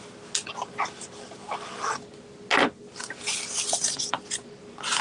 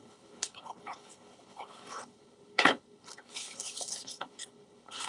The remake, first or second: second